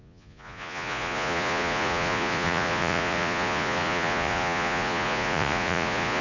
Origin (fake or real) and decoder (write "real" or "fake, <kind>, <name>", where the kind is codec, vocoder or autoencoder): fake, vocoder, Vocos